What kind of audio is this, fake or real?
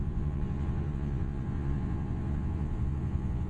fake